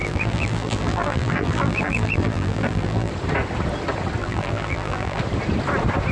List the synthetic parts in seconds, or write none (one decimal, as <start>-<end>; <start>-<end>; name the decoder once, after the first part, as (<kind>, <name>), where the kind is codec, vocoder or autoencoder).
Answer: 0.0-3.1 (vocoder, BigVGAN v2); 4.2-5.2